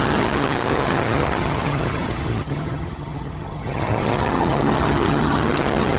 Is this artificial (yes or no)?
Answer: yes